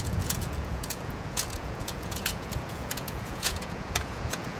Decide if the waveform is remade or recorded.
remade